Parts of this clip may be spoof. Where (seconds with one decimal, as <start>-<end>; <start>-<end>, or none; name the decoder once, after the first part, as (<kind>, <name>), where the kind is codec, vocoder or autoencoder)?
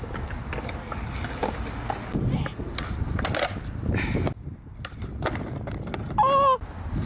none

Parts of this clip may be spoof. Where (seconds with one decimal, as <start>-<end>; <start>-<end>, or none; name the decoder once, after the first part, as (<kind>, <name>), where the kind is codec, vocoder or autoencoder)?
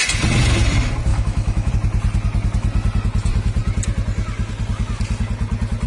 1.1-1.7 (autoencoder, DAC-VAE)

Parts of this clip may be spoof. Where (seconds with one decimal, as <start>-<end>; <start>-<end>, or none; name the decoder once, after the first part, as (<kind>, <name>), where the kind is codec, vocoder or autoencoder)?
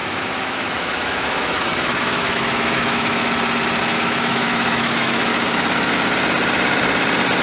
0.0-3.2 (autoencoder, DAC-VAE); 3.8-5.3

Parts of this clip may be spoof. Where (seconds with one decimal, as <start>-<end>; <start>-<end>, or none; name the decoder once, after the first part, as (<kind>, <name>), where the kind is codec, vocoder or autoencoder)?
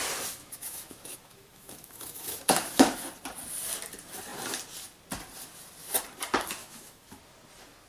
0.4-3.1 (autoencoder, DAC-VAE); 6.6-7.2